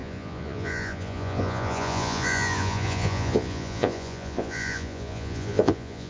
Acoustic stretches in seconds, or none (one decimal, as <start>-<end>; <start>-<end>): none